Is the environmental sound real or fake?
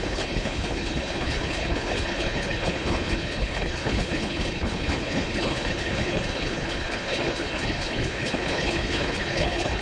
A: fake